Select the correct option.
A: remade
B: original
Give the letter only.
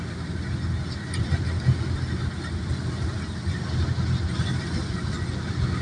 B